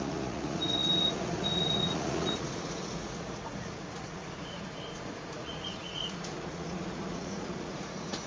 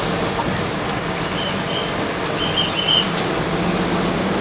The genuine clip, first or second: second